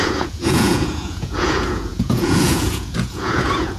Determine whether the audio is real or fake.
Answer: fake